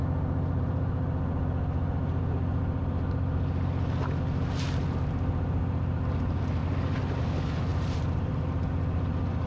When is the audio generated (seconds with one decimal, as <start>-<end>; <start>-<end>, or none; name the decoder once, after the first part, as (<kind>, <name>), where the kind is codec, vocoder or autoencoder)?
7.7-8.3 (vocoder, BigVGAN v2)